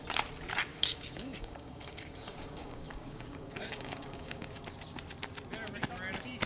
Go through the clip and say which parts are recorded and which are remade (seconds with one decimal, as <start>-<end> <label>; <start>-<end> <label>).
0.0-0.7 recorded; 0.7-4.6 remade; 4.6-6.5 recorded